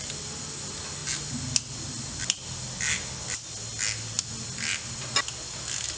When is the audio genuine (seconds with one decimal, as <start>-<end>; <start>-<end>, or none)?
0.0-6.0